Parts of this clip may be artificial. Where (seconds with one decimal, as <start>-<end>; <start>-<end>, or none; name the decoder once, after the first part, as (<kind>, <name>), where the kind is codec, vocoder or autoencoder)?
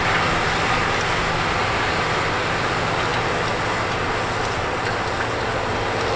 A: none